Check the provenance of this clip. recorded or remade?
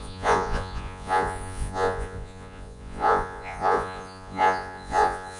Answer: remade